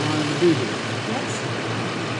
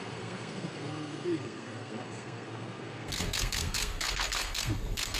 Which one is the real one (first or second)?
first